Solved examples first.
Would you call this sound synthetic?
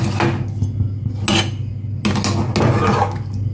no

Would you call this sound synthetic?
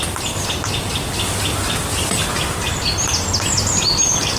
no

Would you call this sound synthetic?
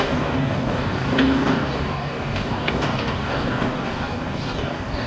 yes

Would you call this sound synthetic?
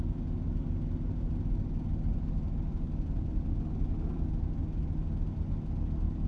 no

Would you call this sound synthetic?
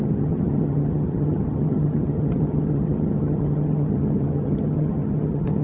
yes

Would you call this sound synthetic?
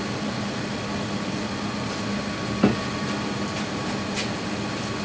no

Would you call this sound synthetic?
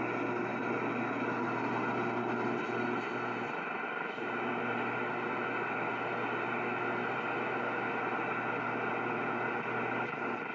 no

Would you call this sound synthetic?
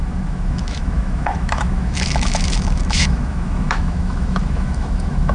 yes